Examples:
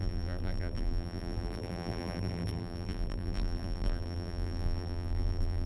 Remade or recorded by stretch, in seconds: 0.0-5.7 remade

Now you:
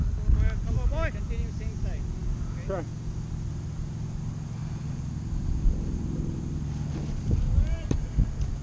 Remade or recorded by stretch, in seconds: 0.0-4.6 recorded; 4.6-8.1 remade; 8.1-8.6 recorded

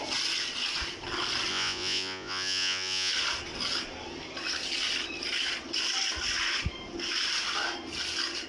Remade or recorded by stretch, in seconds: 0.0-1.5 recorded; 1.5-3.1 remade; 3.1-8.5 recorded

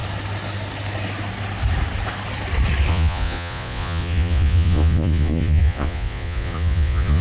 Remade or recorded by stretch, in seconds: 0.0-2.9 recorded; 2.9-7.2 remade

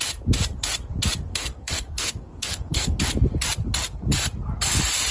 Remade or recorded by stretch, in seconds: 0.0-1.3 recorded; 1.3-3.0 remade; 3.0-5.1 recorded

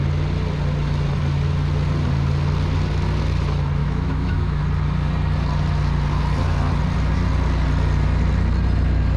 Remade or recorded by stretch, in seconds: 0.0-3.8 recorded; 3.8-4.6 remade; 4.6-9.2 recorded

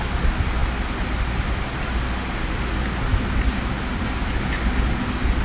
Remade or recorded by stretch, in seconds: 0.0-5.4 recorded

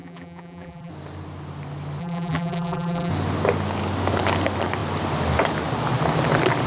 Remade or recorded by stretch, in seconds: 0.0-0.9 remade; 0.9-2.0 recorded; 2.0-3.1 remade; 3.1-6.7 recorded